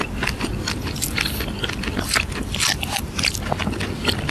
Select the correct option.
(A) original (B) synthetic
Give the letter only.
A